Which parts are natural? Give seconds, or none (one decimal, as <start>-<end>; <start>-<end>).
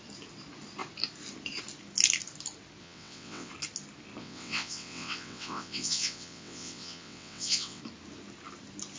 0.0-2.8; 3.5-4.2; 7.8-9.0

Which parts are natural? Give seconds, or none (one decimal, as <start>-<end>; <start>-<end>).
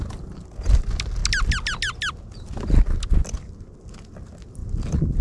0.0-5.2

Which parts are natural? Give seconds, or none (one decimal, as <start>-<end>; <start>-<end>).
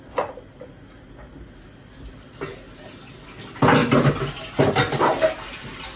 0.0-6.0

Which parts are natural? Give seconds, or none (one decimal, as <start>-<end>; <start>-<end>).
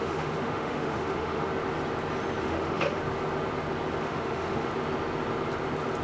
1.5-2.4; 3.0-4.0; 4.7-6.0